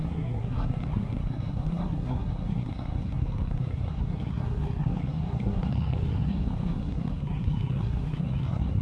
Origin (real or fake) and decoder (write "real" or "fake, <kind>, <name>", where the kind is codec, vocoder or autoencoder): fake, codec, SNAC